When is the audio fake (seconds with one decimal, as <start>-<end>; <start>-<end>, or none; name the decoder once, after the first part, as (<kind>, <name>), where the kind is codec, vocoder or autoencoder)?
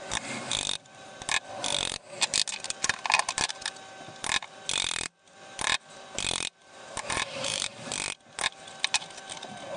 6.6-7.9 (vocoder, BigVGAN v2)